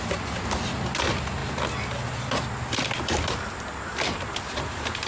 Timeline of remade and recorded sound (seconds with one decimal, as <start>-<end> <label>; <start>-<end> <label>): 0.0-5.1 recorded